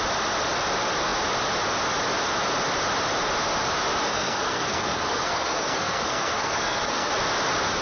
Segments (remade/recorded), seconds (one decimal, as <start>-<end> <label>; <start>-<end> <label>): 0.0-4.1 recorded; 4.1-7.1 remade; 7.1-7.8 recorded